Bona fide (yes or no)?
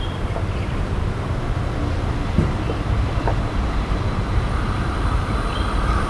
no